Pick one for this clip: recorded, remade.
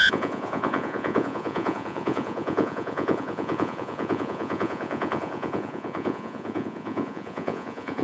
remade